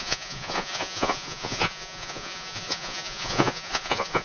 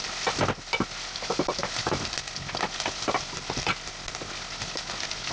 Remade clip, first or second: first